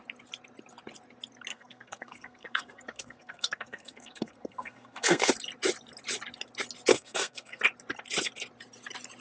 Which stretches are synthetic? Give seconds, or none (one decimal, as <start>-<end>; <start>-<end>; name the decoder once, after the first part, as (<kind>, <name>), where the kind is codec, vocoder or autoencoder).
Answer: 1.5-5.3 (codec, SNAC); 6.9-7.6